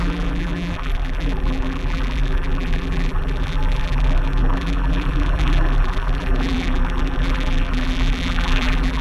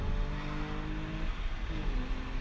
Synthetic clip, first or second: first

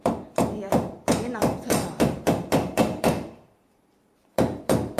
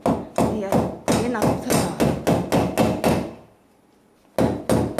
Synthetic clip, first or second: first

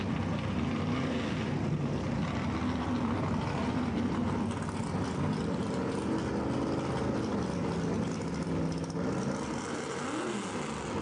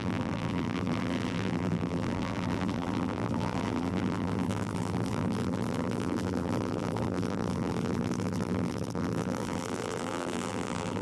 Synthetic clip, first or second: second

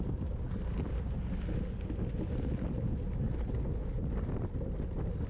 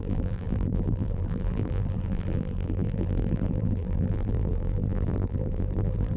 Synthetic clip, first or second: second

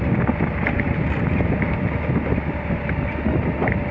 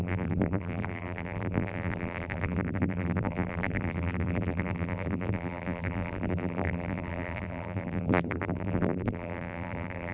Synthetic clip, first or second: second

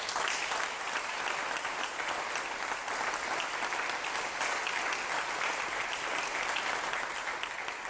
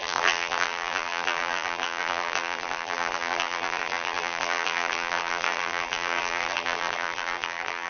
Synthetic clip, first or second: second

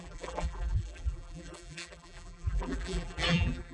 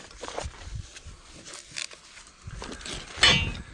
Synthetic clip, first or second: first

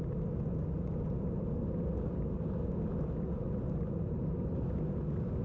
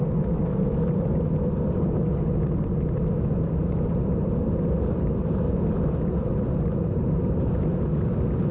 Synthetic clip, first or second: second